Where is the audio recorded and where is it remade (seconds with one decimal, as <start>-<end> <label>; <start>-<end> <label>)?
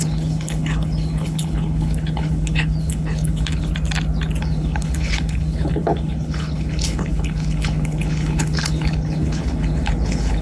0.0-3.7 remade; 3.7-4.4 recorded; 4.4-10.4 remade